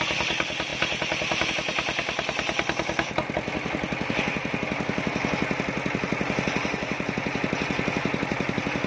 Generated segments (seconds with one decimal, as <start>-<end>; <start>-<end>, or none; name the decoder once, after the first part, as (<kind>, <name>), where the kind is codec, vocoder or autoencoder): none